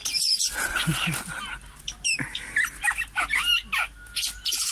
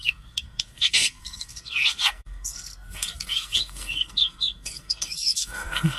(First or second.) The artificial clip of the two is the second